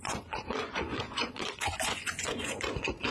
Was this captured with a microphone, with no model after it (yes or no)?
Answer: no